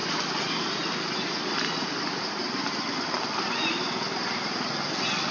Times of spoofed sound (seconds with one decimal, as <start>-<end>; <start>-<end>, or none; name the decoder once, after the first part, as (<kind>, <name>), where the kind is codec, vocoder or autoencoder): none